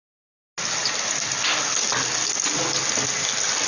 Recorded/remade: recorded